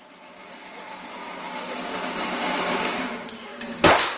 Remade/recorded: remade